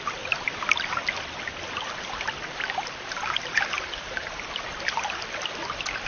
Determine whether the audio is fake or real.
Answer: real